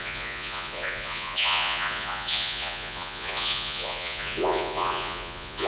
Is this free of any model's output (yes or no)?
no